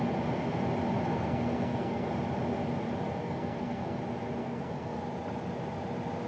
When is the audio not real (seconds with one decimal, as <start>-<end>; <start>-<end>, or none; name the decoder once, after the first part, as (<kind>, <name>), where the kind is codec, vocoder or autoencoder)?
1.1-2.1 (codec, SNAC); 3.2-4.0; 4.4-5.0